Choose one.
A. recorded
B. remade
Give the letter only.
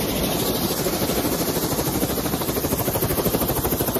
B